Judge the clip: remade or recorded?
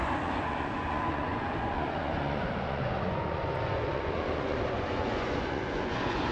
remade